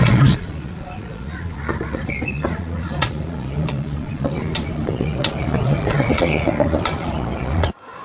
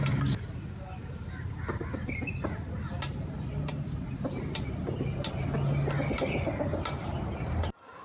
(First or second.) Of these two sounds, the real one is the second